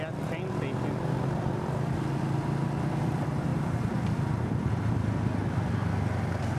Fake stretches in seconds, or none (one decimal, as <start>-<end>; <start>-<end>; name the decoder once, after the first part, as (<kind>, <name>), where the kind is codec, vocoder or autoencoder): 3.5-4.8 (vocoder, BigVGAN v2)